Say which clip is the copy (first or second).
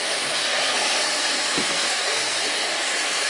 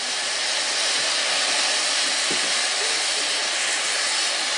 first